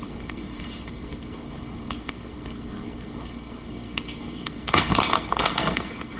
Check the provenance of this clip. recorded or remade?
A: remade